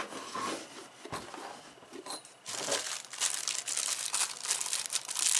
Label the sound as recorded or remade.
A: recorded